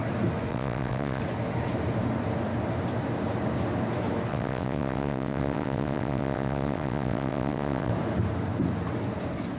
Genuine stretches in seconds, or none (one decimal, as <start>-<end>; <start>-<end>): 0.0-0.5; 1.2-4.3; 7.9-9.6